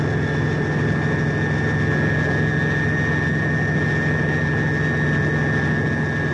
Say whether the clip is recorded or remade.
recorded